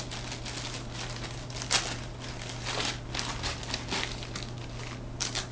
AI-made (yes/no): no